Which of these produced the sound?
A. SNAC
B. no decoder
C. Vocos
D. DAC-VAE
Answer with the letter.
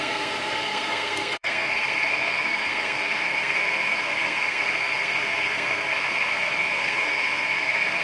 A